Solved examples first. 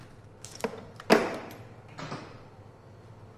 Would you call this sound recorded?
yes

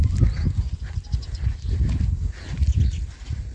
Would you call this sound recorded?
yes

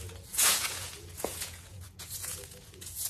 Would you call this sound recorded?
no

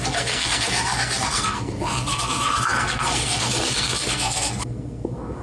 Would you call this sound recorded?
no